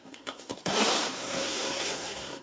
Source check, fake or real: fake